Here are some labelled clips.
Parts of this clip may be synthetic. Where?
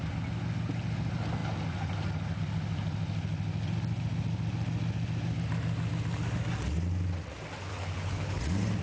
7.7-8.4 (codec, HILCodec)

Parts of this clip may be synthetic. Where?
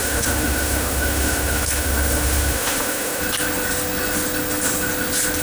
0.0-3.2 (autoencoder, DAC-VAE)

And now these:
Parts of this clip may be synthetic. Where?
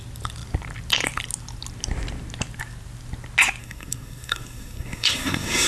3.6-5.7 (codec, SNAC)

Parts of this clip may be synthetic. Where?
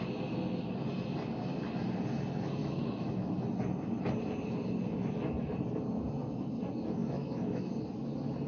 2.6-3.3 (autoencoder, DAC-VAE); 7.0-7.7